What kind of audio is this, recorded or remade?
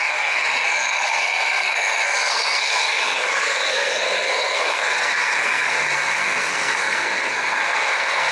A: remade